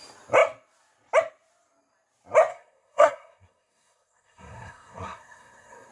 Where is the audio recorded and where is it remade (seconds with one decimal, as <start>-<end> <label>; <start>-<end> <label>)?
0.0-2.5 recorded; 2.5-5.9 remade